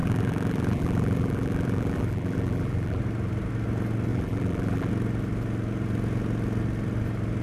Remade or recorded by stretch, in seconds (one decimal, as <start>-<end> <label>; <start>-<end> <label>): 0.0-3.0 remade; 3.0-4.1 recorded; 4.1-4.9 remade; 4.9-7.4 recorded